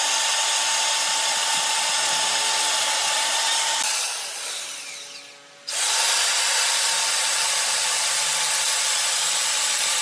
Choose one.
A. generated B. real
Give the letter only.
B